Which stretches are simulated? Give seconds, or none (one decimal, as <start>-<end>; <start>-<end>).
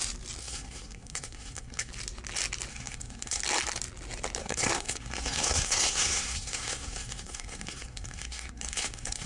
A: 0.4-1.9; 2.7-3.4; 4.4-9.3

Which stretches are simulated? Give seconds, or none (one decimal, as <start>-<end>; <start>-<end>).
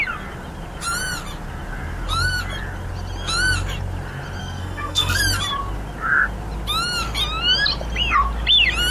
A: 4.4-5.2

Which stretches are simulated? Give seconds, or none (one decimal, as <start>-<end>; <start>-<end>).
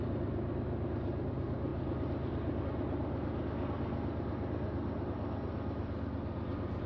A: none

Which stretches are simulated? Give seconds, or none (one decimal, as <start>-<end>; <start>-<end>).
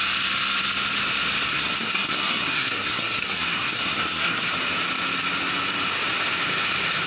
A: 1.5-4.5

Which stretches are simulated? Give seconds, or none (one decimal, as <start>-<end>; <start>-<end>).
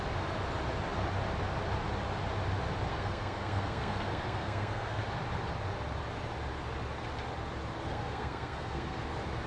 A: 2.9-5.0; 7.9-9.0